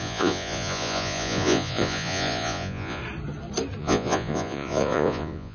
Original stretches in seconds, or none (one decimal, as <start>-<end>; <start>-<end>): 3.0-3.8